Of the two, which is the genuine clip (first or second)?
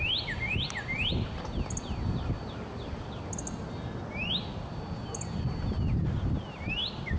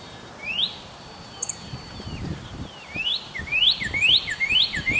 first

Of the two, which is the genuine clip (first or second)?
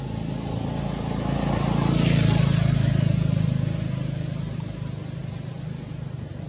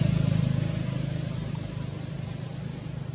first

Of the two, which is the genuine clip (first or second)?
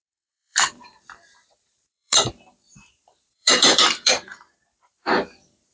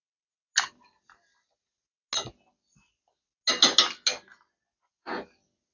second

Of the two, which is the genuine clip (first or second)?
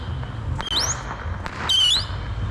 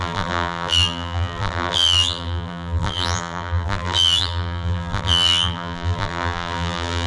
first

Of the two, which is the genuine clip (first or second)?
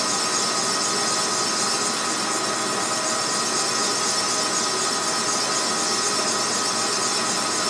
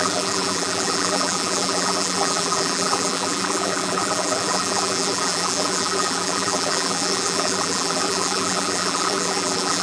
first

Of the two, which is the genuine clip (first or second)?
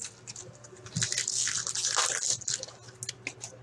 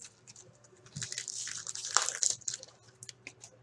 first